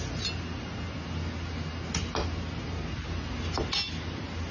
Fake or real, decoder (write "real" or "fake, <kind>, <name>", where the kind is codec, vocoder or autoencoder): real